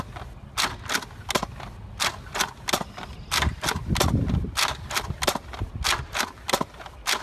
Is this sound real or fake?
real